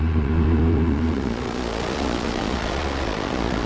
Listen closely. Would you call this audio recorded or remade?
remade